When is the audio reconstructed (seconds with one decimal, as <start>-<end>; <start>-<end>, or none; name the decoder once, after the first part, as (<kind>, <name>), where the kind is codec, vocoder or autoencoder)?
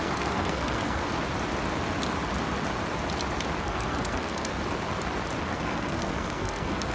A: 0.0-1.0 (codec, SNAC); 3.6-4.5; 5.4-6.9